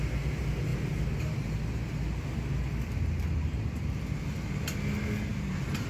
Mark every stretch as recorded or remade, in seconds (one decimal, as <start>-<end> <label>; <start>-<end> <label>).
0.0-5.9 recorded